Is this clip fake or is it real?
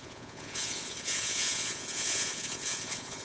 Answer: fake